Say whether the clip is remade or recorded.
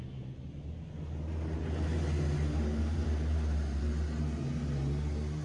recorded